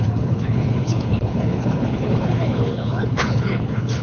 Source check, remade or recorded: remade